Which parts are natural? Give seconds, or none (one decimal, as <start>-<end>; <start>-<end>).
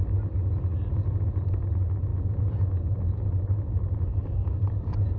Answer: 0.0-5.2